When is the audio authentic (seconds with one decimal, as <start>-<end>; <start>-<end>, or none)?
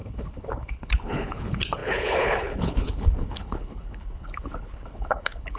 none